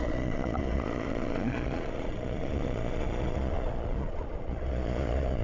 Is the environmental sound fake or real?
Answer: fake